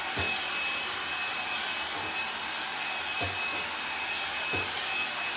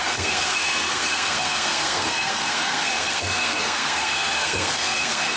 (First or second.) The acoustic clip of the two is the first